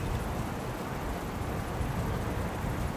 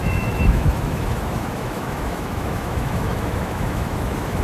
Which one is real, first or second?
first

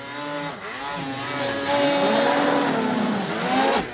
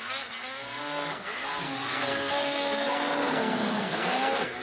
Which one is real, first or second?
first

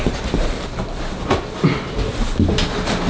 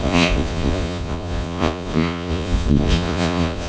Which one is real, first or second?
first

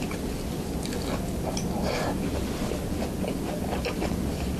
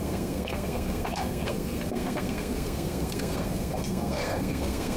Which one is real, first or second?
first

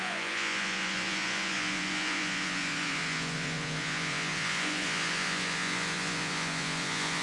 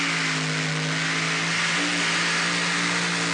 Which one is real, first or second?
second